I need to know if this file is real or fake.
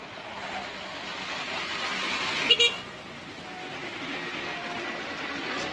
real